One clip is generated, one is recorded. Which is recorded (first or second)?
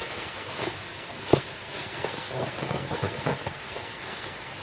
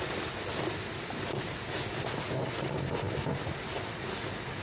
second